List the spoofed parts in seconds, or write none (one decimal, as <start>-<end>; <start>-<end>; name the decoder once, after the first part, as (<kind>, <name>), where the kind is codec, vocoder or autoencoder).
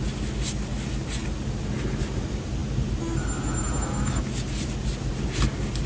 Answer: none